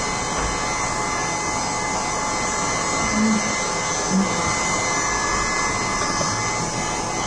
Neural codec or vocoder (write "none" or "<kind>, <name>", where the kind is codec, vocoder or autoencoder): none